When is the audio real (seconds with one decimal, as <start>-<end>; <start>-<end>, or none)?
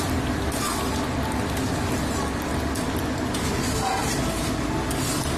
0.0-5.4